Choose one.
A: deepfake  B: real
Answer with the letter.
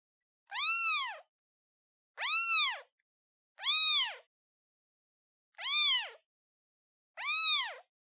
B